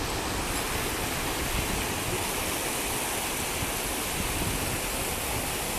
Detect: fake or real real